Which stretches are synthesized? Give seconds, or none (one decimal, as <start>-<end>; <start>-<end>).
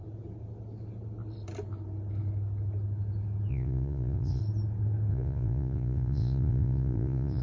3.5-4.4; 5.1-7.4